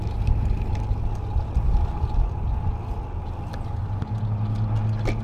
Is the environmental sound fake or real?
real